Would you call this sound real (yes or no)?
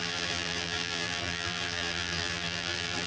no